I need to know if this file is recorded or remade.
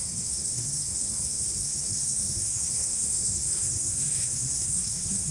remade